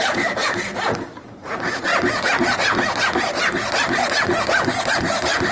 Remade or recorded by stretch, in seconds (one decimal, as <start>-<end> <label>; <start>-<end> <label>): 0.0-1.9 remade; 1.9-4.9 recorded; 4.9-5.5 remade